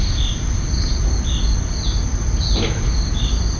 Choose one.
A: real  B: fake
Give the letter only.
A